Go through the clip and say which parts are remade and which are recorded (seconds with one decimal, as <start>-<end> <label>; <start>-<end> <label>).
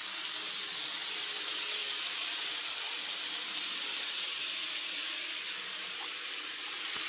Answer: 0.0-1.8 remade; 1.8-2.6 recorded; 2.6-7.1 remade